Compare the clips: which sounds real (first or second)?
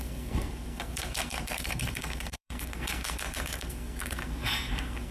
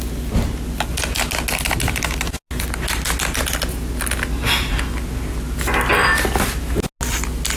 second